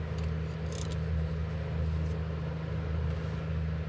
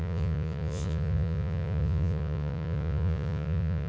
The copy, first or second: second